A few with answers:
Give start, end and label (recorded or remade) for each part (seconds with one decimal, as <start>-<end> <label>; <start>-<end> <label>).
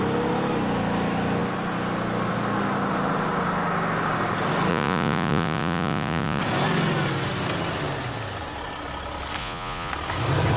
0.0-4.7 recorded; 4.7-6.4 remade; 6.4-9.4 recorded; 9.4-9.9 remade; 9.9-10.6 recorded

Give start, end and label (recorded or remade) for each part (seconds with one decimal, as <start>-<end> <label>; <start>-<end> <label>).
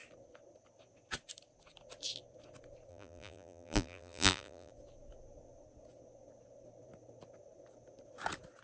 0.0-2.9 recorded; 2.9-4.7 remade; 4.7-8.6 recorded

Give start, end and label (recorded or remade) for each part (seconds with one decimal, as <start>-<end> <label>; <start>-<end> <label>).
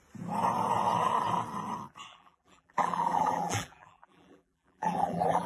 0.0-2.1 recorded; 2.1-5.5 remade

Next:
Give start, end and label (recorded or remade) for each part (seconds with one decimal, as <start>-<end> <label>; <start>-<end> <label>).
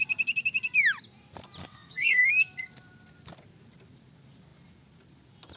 0.0-1.6 recorded; 1.6-2.3 remade; 2.3-5.6 recorded